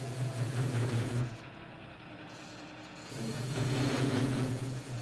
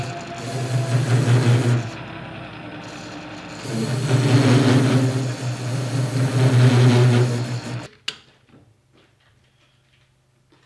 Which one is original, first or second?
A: second